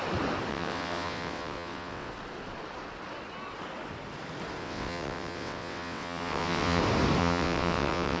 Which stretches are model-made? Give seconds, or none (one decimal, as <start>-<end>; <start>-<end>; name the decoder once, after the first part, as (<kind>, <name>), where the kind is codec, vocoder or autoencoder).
0.5-2.1 (vocoder, WaveNeXt); 4.6-6.8; 7.2-8.2